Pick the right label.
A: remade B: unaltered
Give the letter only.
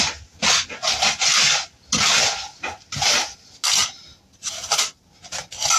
B